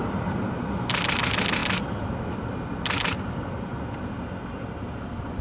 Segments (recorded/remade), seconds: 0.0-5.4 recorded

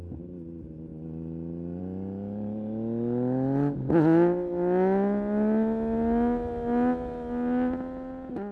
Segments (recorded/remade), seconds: 0.0-8.5 recorded

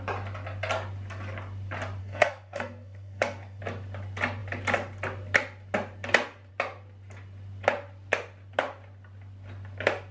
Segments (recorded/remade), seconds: 0.0-2.0 recorded; 2.0-3.6 remade; 3.6-10.1 recorded

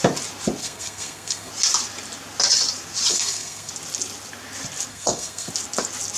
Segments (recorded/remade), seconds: 0.0-0.6 recorded; 0.6-1.5 remade; 1.5-3.1 recorded; 3.1-3.7 remade; 3.7-4.9 recorded; 4.9-5.5 remade; 5.5-6.2 recorded

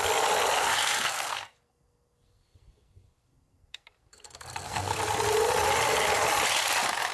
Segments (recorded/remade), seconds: 0.0-0.7 recorded; 0.7-5.0 remade; 5.0-7.1 recorded

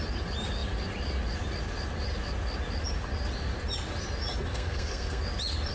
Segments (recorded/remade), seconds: 0.0-4.5 recorded; 4.5-5.2 remade; 5.2-5.7 recorded

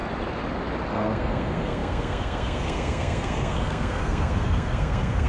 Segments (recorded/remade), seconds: 0.0-0.9 recorded; 0.9-5.3 remade

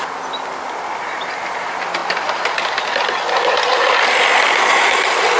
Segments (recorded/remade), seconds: 0.0-5.4 recorded